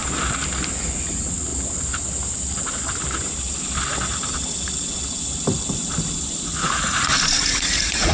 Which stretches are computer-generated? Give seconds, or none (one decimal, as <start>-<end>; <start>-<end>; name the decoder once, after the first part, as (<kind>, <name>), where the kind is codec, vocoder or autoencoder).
0.7-1.5 (vocoder, Vocos); 6.4-8.1